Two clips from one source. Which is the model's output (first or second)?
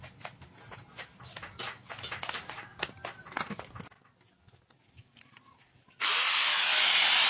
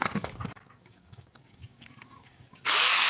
second